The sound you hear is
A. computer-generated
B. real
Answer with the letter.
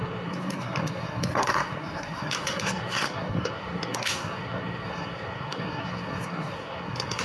A